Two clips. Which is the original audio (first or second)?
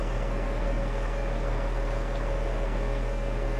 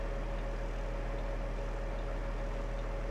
second